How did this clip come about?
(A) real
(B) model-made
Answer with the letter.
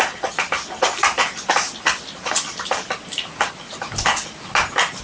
A